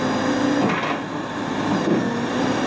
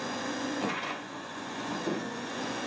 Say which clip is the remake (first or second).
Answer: second